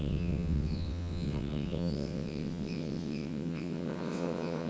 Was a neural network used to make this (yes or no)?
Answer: yes